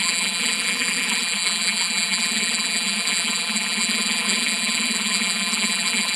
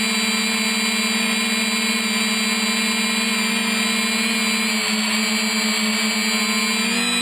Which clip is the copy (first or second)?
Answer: first